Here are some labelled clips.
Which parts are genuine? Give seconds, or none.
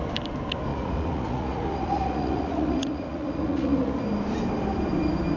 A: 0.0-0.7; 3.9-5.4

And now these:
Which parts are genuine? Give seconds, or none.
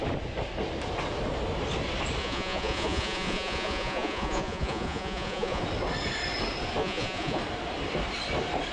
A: 0.0-2.2; 5.6-6.8; 7.4-8.7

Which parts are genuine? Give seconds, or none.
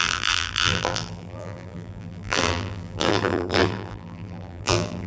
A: none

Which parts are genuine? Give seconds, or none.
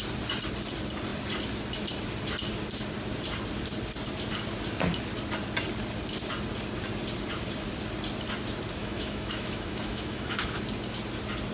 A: 0.0-8.8; 10.6-11.5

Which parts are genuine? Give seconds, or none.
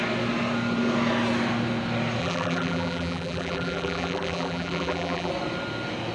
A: 0.0-2.2; 5.3-6.1